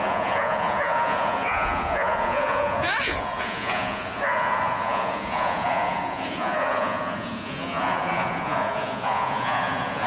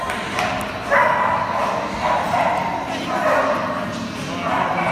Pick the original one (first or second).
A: second